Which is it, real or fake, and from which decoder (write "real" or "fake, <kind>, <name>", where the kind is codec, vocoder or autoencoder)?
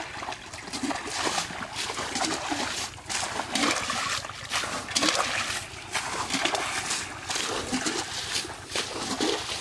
real